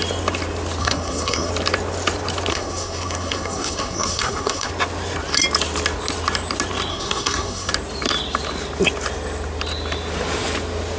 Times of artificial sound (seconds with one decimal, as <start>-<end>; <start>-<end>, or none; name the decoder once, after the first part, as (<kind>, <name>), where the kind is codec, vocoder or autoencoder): 0.8-1.5 (codec, SNAC); 2.5-4.7; 6.9-7.7